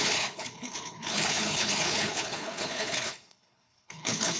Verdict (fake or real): fake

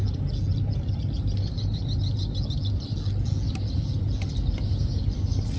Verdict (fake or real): real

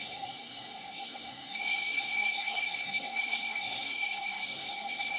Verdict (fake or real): fake